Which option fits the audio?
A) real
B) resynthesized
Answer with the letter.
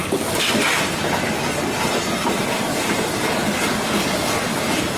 A